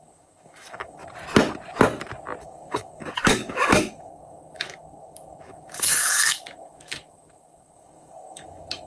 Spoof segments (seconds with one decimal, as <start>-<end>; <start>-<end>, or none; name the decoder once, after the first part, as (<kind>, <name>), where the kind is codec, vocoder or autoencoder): 0.0-1.0 (codec, DAC); 2.4-8.9